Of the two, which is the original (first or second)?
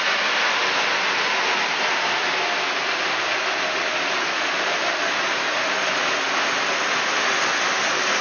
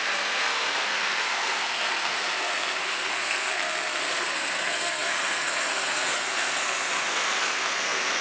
first